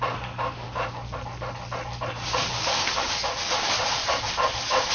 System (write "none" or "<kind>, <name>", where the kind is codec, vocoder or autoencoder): none